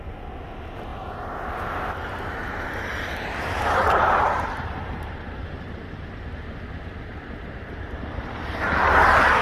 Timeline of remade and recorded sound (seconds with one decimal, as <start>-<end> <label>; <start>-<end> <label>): 0.0-0.9 recorded; 0.9-5.4 remade; 5.4-7.1 recorded; 7.1-8.2 remade; 8.2-9.4 recorded